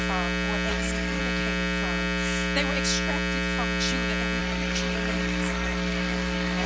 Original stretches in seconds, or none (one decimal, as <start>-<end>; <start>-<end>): 0.0-0.7; 1.2-4.4